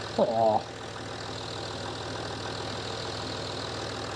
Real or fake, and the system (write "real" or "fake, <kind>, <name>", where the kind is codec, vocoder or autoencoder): real